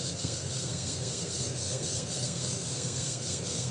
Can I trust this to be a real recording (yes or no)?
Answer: no